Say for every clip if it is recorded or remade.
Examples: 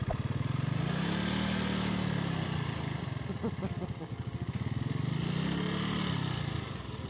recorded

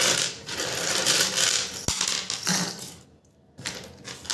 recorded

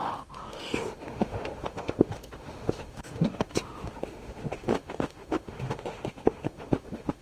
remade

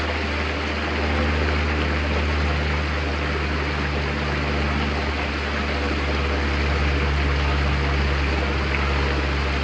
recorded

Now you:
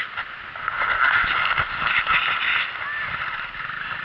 recorded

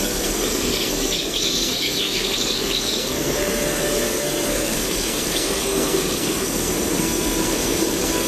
remade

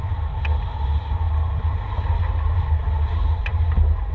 recorded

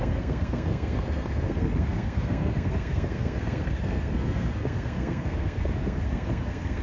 remade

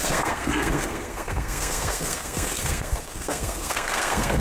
remade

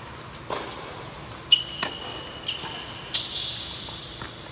recorded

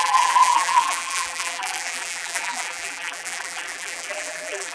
remade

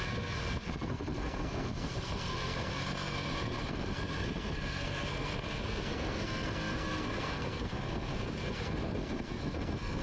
remade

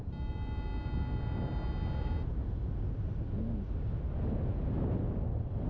recorded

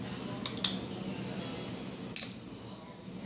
recorded